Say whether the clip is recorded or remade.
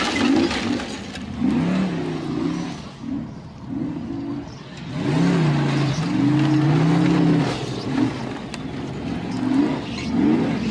recorded